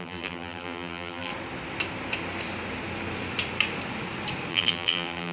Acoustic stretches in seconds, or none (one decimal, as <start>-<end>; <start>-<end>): 1.3-4.5